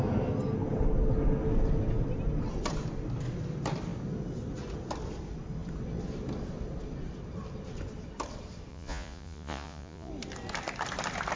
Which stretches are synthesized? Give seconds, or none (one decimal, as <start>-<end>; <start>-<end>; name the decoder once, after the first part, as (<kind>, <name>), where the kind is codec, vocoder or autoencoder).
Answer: 8.7-10.1 (vocoder, Vocos)